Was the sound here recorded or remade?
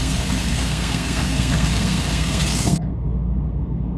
remade